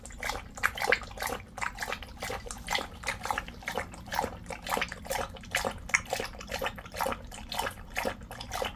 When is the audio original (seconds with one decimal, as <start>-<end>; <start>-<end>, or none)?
0.0-8.8